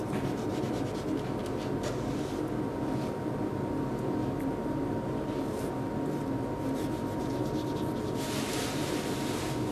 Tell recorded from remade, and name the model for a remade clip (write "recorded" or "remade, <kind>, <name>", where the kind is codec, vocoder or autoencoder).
recorded